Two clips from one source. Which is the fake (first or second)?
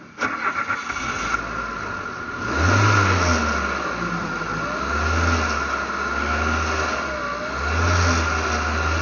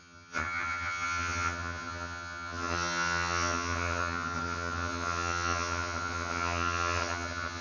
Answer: second